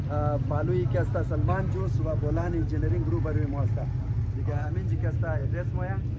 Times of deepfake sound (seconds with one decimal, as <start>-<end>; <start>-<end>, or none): none